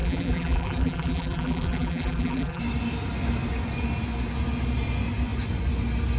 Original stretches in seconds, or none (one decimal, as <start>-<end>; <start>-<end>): 2.6-6.2